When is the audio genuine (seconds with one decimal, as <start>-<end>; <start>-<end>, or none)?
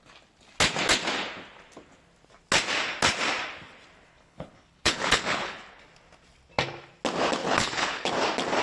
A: 0.0-4.1; 5.8-7.4; 8.1-8.6